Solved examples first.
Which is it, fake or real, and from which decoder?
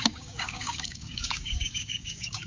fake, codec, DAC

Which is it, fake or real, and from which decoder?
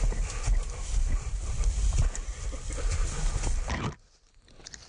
fake, vocoder, BigVGAN v2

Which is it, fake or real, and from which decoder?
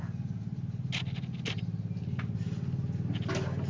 real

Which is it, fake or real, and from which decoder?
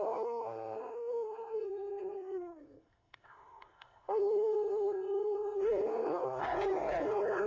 fake, codec, SNAC